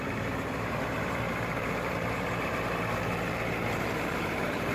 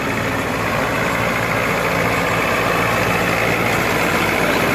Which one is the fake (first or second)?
first